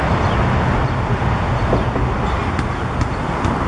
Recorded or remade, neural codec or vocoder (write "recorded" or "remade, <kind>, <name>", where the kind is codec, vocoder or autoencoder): recorded